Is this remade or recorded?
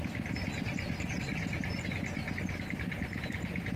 recorded